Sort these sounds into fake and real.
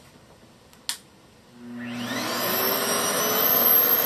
real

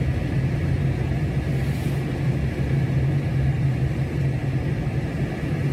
real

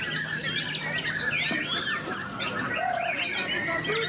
real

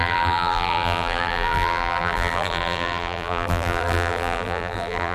fake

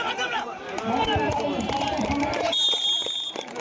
fake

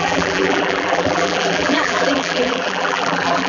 fake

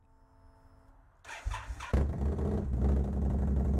real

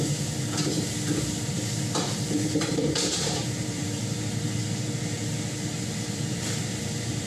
fake